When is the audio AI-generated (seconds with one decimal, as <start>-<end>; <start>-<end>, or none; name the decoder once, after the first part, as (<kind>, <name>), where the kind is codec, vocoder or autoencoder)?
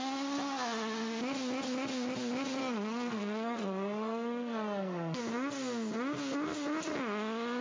2.6-5.2 (codec, SNAC)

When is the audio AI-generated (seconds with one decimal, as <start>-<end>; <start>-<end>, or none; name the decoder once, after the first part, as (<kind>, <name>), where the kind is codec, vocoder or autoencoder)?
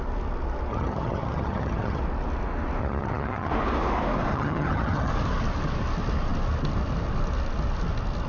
0.7-2.0 (vocoder, HiFi-GAN); 2.8-3.5; 4.3-5.1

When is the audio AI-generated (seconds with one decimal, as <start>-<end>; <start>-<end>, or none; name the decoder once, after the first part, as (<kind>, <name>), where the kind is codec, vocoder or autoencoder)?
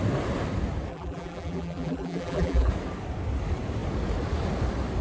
0.9-2.7 (vocoder, BigVGAN v2)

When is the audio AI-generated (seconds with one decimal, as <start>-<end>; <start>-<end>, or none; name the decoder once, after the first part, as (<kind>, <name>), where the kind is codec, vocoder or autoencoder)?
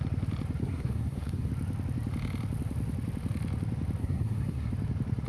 0.6-1.5 (codec, SNAC); 4.0-4.7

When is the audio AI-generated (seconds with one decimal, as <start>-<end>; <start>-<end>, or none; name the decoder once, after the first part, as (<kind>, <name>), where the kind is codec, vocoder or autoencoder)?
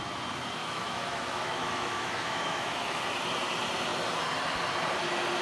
0.6-3.0 (autoencoder, DAC-VAE)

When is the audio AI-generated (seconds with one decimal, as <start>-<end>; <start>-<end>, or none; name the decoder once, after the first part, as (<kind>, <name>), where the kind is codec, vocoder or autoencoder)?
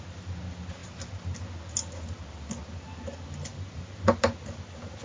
none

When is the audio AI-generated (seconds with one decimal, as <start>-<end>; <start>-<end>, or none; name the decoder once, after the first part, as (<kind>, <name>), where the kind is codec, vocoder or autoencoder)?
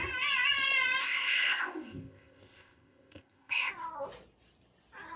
1.0-3.7 (codec, ZipCodec)